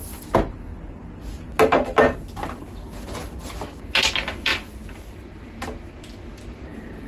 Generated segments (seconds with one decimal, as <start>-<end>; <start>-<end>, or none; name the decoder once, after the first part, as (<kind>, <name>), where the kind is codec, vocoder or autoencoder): none